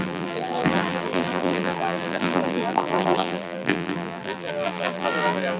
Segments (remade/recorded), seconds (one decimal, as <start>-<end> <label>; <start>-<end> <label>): 0.0-5.6 remade